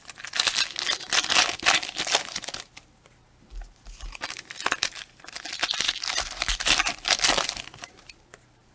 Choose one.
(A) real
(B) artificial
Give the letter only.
A